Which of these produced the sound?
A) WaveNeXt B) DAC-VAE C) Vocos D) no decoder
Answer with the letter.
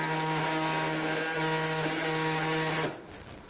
D